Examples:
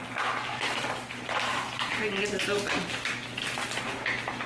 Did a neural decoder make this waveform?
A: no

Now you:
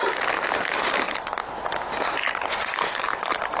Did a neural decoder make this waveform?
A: no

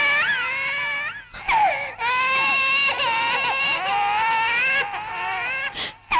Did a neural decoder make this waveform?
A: no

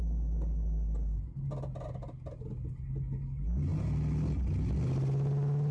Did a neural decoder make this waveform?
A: no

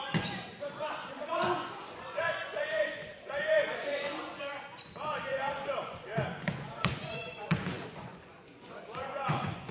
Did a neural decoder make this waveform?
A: yes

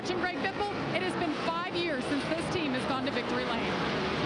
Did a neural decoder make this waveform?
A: no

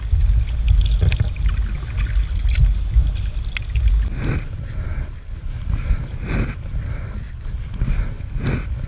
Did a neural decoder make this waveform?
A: no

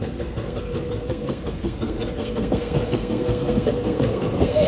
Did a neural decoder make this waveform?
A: yes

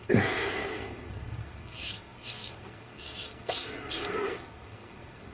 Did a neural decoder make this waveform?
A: yes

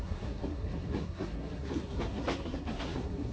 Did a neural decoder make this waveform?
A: yes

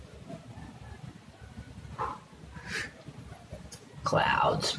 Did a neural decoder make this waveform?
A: no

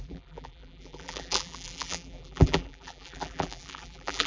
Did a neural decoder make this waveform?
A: yes